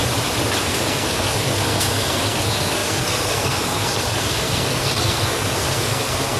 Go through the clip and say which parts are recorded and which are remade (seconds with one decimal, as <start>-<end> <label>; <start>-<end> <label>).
0.0-0.6 recorded; 0.6-6.4 remade